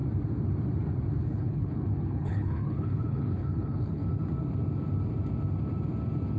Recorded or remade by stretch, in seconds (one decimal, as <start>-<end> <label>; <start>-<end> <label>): 0.0-1.2 recorded; 1.2-4.0 remade; 4.0-6.4 recorded